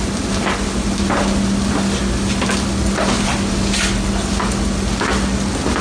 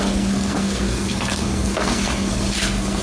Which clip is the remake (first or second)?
second